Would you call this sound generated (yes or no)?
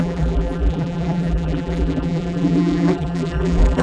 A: yes